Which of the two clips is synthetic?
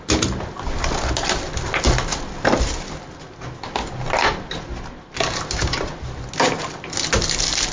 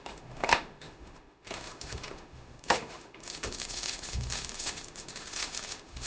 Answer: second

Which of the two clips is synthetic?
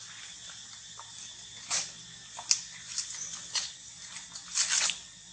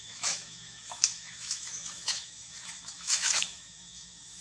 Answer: second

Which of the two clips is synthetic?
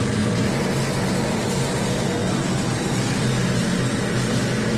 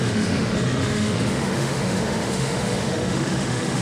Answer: second